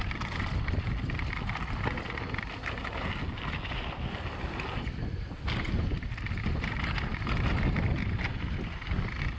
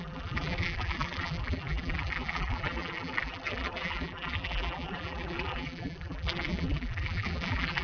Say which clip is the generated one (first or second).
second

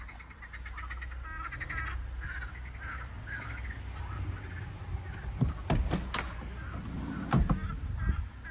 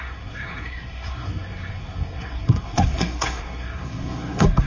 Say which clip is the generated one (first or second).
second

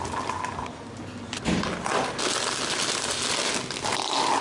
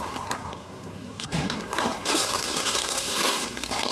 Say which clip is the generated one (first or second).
second